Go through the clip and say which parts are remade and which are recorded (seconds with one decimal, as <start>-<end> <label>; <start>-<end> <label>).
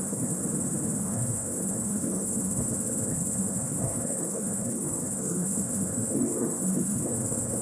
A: 0.0-0.4 remade; 0.4-1.0 recorded; 1.0-7.6 remade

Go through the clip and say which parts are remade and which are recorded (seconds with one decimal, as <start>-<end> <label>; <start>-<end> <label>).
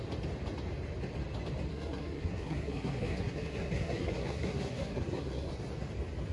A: 0.0-1.7 recorded; 1.7-5.5 remade; 5.5-6.3 recorded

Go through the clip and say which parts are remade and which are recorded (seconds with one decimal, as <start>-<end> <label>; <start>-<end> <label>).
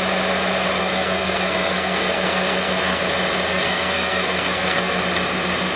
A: 0.0-0.8 recorded; 0.8-3.0 remade; 3.0-3.5 recorded; 3.5-5.0 remade; 5.0-5.8 recorded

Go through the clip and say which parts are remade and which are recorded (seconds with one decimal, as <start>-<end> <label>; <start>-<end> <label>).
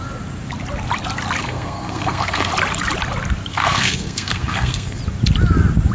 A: 0.0-1.4 recorded; 1.4-2.5 remade; 2.5-3.5 recorded; 3.5-5.0 remade; 5.0-5.9 recorded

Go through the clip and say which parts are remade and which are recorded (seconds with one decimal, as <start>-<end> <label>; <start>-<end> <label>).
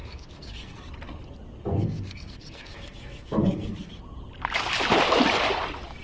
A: 0.0-0.8 remade; 0.8-1.7 recorded; 1.7-3.9 remade; 3.9-6.0 recorded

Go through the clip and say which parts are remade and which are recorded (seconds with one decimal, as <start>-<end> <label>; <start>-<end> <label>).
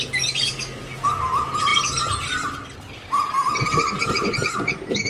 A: 0.0-5.1 recorded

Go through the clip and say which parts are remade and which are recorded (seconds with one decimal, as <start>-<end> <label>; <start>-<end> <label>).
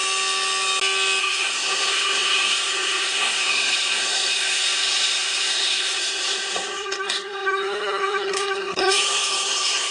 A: 0.0-1.2 recorded; 1.2-9.9 remade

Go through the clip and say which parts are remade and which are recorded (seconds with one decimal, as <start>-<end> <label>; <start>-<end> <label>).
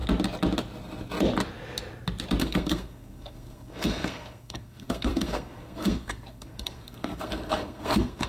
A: 0.0-2.4 recorded; 2.4-8.3 remade